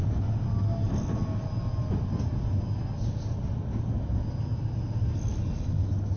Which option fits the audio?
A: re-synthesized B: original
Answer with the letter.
B